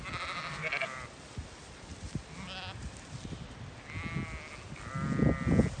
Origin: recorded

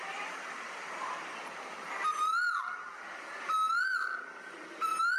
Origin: recorded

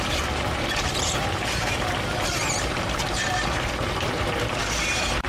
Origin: remade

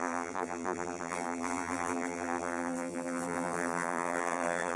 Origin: remade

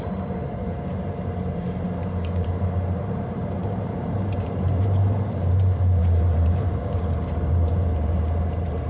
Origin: remade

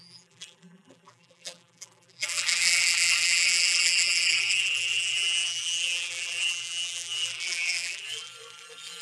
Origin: remade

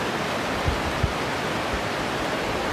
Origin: recorded